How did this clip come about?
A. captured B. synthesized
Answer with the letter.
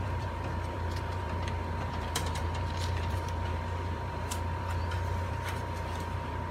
B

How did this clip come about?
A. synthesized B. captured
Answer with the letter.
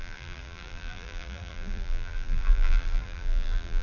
A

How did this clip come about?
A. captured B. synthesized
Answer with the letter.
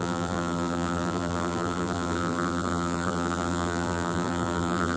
B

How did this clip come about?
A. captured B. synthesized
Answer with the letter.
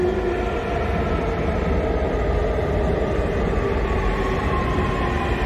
A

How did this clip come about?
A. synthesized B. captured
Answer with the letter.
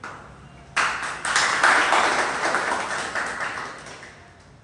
B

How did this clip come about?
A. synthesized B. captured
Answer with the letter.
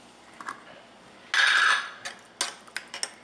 B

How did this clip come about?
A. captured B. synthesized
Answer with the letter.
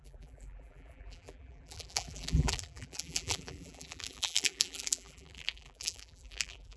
B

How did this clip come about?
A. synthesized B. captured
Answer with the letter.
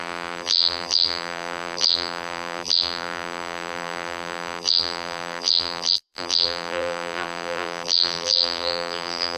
A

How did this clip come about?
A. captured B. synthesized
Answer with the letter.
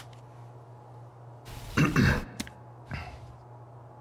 B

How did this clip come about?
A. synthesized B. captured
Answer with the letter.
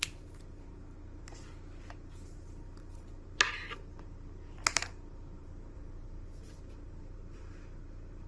A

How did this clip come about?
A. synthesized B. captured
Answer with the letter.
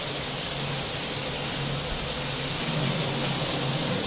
B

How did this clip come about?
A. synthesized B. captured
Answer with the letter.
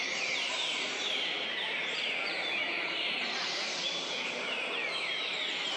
A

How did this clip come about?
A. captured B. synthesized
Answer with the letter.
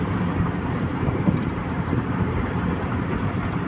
B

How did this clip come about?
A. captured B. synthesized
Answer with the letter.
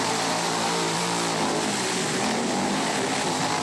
B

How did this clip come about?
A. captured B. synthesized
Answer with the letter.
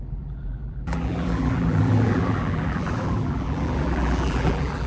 B